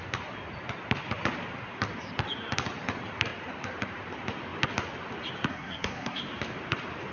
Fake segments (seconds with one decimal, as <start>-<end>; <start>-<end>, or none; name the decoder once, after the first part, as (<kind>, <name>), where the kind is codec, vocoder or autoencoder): 5.5-6.2 (codec, SNAC)